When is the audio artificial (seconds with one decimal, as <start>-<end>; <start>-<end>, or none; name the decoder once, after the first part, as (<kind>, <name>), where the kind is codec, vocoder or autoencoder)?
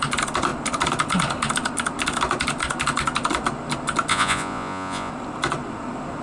4.1-5.1 (vocoder, Vocos)